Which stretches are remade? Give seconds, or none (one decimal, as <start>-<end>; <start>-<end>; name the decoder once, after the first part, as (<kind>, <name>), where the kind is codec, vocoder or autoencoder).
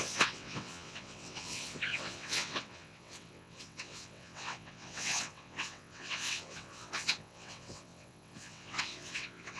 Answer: 0.0-9.6 (vocoder, WaveNeXt)